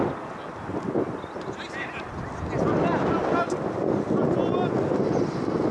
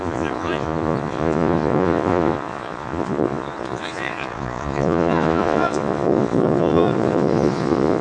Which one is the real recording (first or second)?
first